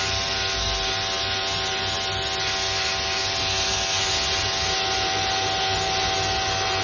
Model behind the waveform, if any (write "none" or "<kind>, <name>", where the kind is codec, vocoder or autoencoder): none